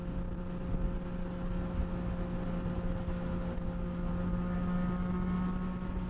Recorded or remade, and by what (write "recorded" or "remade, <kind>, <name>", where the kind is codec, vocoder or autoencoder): recorded